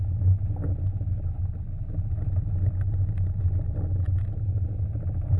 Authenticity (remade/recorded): recorded